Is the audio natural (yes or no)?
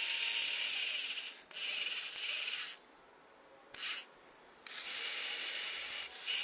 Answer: yes